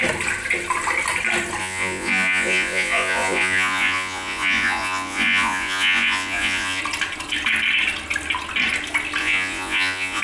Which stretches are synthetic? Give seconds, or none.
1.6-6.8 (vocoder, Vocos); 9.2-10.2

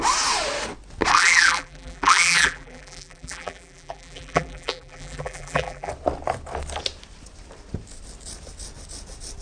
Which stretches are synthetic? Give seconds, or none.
1.1-5.9 (vocoder, BigVGAN v2)

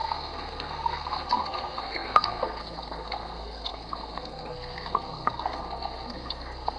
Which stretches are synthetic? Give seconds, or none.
0.0-6.8 (codec, SNAC)

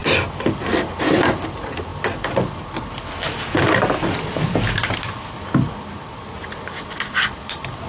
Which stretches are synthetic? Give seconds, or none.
none

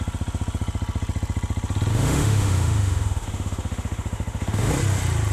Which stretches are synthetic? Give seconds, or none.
1.9-4.7 (autoencoder, DAC-VAE)

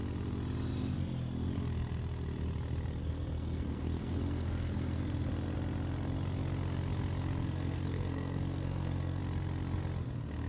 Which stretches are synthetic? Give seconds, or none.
3.0-5.3 (codec, SNAC); 7.4-9.2

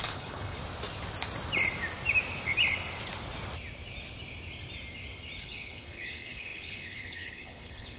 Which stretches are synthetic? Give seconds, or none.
0.0-0.6 (codec, HILCodec); 5.4-8.0